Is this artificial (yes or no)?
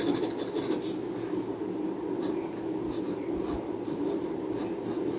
no